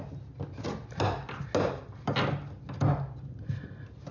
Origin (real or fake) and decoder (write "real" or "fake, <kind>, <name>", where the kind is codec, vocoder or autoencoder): real